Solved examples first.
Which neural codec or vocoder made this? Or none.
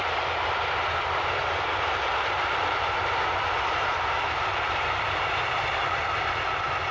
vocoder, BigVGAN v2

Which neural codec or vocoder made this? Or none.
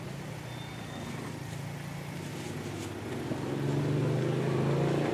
none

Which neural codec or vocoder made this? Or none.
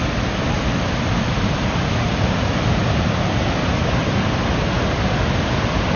none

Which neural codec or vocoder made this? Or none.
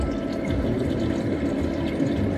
none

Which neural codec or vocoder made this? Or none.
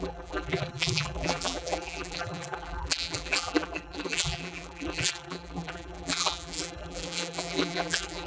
vocoder, BigVGAN v2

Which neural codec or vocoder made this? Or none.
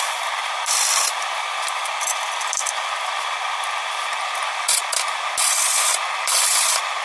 vocoder, BigVGAN v2